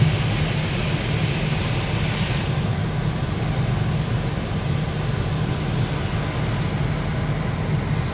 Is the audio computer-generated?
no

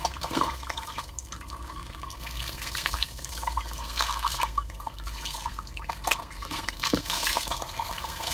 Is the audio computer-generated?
yes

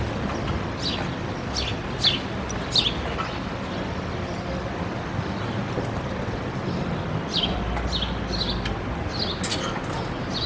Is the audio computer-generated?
no